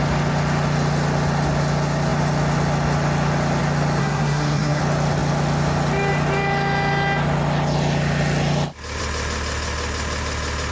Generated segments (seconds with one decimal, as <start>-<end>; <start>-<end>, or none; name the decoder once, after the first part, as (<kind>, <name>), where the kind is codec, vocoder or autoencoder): 4.0-4.8 (codec, SNAC)